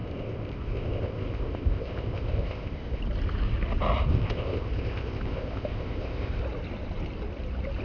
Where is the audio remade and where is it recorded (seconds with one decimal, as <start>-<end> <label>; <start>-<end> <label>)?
0.0-3.0 remade; 3.0-4.1 recorded; 4.1-6.4 remade; 6.4-7.8 recorded